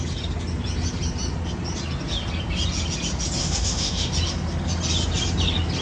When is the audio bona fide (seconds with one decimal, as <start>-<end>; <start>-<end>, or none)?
0.0-3.4; 4.1-5.8